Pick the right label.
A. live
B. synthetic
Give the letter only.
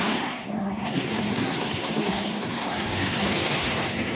B